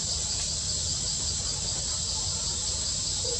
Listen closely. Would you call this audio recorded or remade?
recorded